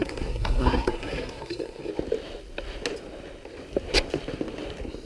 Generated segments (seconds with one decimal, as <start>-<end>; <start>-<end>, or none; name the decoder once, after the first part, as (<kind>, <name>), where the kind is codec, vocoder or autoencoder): 0.0-1.9 (codec, SNAC)